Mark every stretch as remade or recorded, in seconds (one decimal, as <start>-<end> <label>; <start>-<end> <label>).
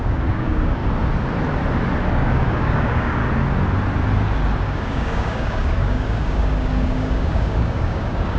0.0-0.8 remade; 0.8-2.1 recorded; 2.1-3.2 remade; 3.2-4.6 recorded; 4.6-8.4 remade